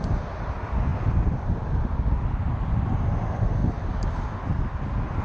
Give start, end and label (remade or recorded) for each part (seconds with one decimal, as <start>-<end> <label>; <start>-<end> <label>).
0.0-5.2 recorded